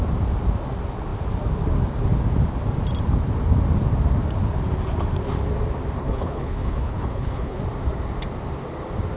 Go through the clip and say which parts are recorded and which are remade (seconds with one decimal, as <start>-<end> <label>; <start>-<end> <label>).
0.0-6.0 recorded; 6.0-7.6 remade; 7.6-9.2 recorded